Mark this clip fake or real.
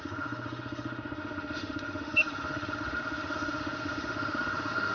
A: fake